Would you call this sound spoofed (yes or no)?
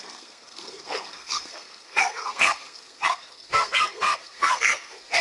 yes